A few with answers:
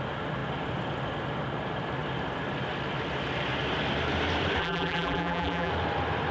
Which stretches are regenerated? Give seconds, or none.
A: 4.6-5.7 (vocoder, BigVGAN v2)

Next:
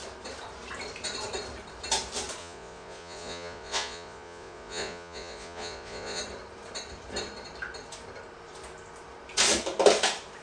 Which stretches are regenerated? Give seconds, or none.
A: 2.4-6.2 (vocoder, Vocos)

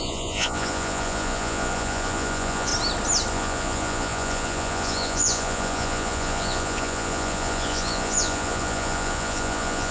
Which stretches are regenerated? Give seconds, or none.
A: 0.0-2.7 (vocoder, Vocos); 3.3-9.9

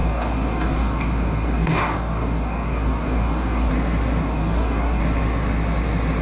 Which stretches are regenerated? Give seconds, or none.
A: 0.0-3.7 (codec, DAC); 4.2-5.0

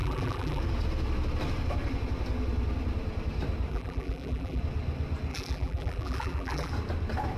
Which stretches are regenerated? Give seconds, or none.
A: 0.0-0.6 (vocoder, BigVGAN v2); 3.7-4.6; 5.3-6.7